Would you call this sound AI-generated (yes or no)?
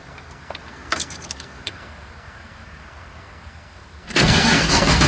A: yes